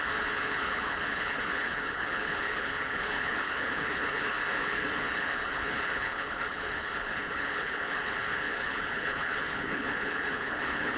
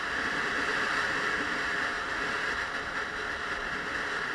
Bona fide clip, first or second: second